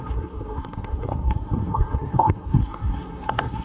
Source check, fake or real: fake